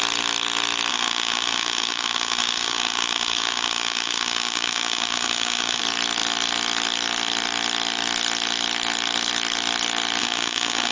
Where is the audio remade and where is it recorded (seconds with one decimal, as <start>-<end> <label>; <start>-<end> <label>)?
0.0-0.9 recorded; 0.9-5.8 remade; 5.8-10.2 recorded; 10.2-10.9 remade